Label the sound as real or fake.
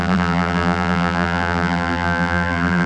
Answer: fake